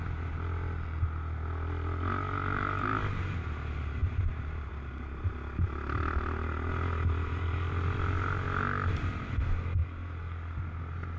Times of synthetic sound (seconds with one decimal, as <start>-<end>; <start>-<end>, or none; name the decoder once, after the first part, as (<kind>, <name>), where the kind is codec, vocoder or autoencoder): 4.0-4.7 (vocoder, BigVGAN v2)